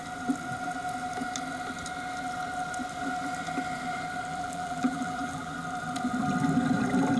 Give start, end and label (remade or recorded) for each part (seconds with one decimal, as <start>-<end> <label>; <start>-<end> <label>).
0.0-4.3 recorded; 4.3-5.5 remade; 5.5-7.2 recorded